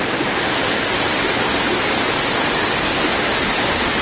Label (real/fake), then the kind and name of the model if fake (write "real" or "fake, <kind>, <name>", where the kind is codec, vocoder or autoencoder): real